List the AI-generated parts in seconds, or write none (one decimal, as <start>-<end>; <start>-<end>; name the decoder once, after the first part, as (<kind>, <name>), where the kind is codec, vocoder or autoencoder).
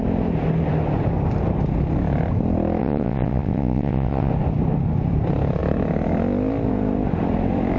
2.8-4.3 (vocoder, WaveNeXt)